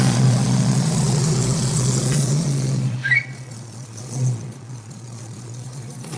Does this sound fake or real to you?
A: fake